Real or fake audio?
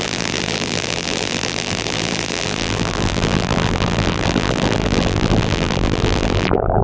fake